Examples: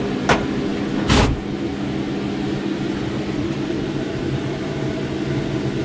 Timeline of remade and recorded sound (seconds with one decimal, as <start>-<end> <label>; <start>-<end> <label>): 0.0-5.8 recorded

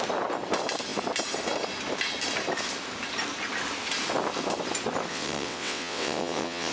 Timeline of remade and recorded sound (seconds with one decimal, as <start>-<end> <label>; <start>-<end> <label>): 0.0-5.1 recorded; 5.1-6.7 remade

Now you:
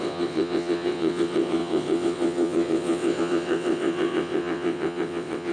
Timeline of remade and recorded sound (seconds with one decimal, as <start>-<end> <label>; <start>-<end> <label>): 0.0-5.5 remade

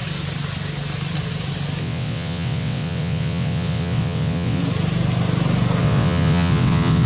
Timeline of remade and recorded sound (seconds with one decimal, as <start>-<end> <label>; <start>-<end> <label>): 0.0-1.8 recorded; 1.8-4.6 remade; 4.6-5.8 recorded; 5.8-7.1 remade

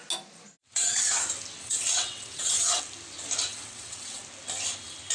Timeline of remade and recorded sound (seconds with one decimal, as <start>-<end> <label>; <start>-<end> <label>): 0.0-0.6 recorded; 0.6-1.2 remade; 1.2-1.6 recorded; 1.6-2.8 remade; 2.8-3.5 recorded; 3.5-4.2 remade; 4.2-5.1 recorded

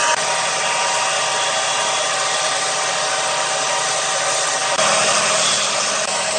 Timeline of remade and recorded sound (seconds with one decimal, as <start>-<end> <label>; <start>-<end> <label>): 0.0-6.4 recorded

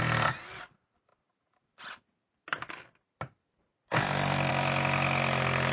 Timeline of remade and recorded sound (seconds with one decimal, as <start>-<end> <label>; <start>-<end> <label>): 0.0-5.7 recorded

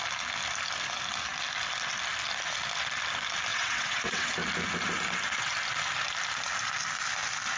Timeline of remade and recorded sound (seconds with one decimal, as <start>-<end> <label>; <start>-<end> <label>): 0.0-3.5 recorded; 3.5-4.3 remade; 4.3-7.6 recorded